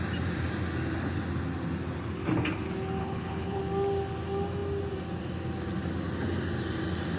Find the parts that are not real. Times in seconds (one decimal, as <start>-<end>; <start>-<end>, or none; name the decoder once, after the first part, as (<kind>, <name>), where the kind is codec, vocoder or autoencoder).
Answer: 3.0-3.6 (codec, HILCodec)